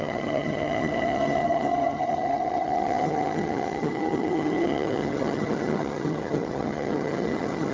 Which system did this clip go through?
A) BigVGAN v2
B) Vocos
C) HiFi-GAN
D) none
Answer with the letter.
C